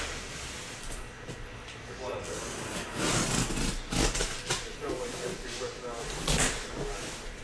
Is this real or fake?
real